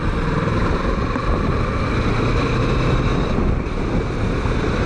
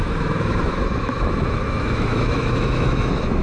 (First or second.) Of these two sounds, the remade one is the second